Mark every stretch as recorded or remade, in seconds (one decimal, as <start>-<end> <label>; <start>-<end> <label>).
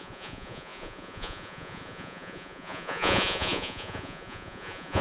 0.0-5.0 remade